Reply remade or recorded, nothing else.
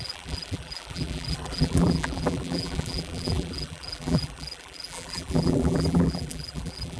remade